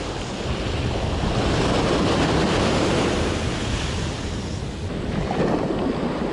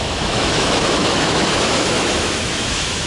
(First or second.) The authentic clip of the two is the first